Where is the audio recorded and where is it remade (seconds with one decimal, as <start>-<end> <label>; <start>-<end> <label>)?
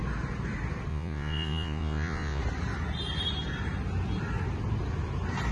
0.0-0.9 recorded; 0.9-2.4 remade; 2.4-5.5 recorded